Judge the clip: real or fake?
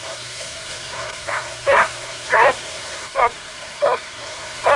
fake